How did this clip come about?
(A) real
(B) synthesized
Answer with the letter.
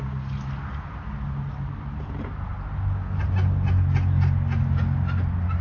A